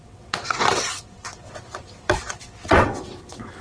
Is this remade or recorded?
remade